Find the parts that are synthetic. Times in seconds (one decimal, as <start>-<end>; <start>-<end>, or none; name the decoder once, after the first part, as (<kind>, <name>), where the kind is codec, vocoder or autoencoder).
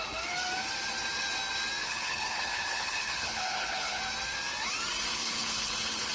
1.8-4.0 (codec, HILCodec); 5.1-6.1